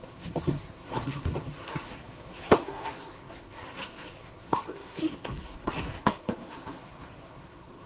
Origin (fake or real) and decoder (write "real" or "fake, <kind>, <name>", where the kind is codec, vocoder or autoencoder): fake, codec, SNAC